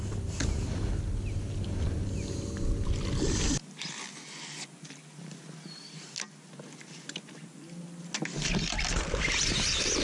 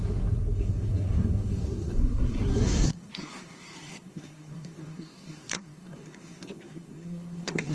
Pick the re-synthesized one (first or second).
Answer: second